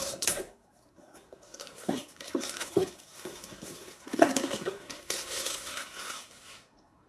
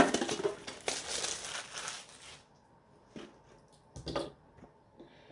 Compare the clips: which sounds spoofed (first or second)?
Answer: first